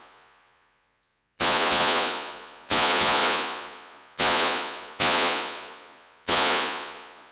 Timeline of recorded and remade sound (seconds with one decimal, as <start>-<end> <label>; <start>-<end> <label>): 0.0-7.3 remade